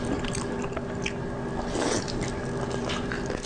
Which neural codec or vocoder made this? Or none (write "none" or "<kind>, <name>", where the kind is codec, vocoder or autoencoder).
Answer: none